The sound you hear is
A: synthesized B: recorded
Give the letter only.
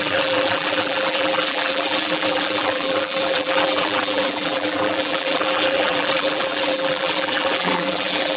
A